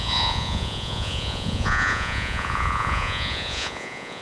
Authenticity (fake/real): fake